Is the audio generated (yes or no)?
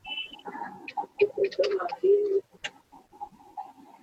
no